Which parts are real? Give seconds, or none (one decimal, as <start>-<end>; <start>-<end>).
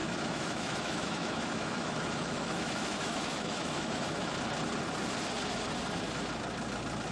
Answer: 4.3-7.1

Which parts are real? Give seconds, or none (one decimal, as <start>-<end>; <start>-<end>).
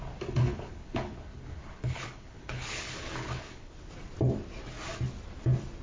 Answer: 0.0-0.4; 3.9-5.8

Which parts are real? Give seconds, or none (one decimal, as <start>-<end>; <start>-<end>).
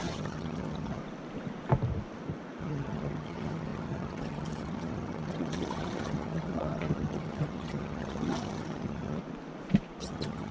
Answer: 1.0-2.6; 9.2-10.0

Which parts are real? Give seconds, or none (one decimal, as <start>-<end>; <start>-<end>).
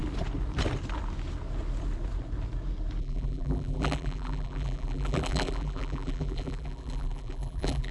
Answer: 0.0-3.0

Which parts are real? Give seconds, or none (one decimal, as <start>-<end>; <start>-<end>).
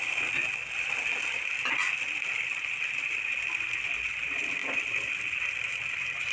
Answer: 0.0-6.3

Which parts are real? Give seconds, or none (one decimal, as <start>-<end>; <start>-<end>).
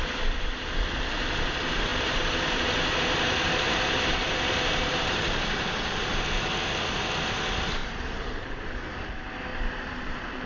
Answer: 0.0-1.9; 6.2-7.8; 8.8-9.5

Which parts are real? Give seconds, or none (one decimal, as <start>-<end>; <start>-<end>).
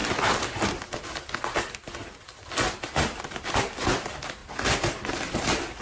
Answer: 0.0-3.5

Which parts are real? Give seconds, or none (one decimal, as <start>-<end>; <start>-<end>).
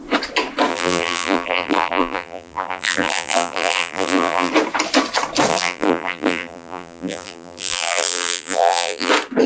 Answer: 0.0-0.7; 4.5-5.5; 9.1-9.5